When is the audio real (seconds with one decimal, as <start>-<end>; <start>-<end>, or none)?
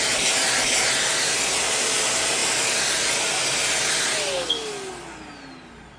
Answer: 0.0-6.0